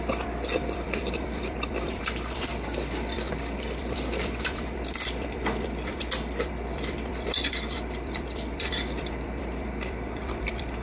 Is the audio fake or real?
fake